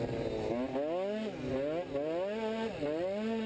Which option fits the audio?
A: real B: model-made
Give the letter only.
A